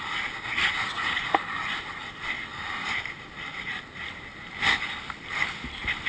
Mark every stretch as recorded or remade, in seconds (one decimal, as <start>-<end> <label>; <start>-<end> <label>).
0.0-2.5 recorded; 2.5-3.7 remade; 3.7-4.3 recorded; 4.3-4.9 remade; 4.9-6.1 recorded